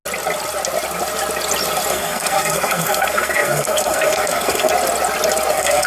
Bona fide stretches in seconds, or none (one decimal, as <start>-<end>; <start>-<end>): 0.0-1.9; 4.7-5.5